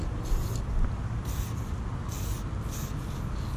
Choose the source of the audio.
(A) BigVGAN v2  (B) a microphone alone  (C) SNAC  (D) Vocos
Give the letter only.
B